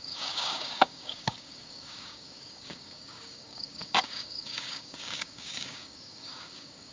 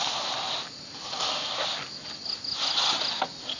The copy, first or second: first